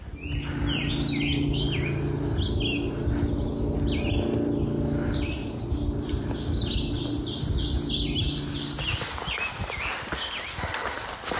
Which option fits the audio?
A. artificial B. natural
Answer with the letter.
B